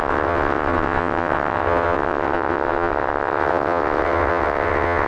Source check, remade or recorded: remade